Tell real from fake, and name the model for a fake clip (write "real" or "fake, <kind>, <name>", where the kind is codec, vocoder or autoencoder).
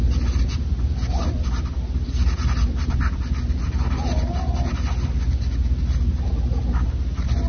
real